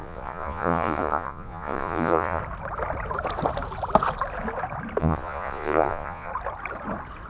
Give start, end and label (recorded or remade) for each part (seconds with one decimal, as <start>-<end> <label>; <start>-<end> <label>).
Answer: 0.0-2.4 remade; 2.4-5.0 recorded; 5.0-6.3 remade; 6.3-7.3 recorded